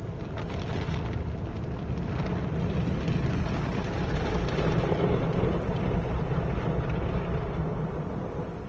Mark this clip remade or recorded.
recorded